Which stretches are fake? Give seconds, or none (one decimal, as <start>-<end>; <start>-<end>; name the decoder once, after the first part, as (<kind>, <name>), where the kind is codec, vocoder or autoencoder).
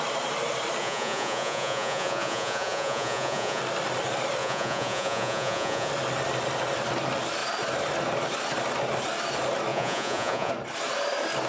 0.8-3.6 (vocoder, Vocos); 4.4-5.9; 9.7-10.5